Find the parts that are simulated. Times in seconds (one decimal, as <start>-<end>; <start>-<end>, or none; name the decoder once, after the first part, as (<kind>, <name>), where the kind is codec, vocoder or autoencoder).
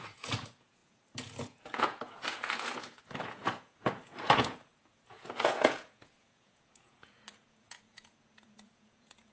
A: 0.0-9.3 (vocoder, Vocos)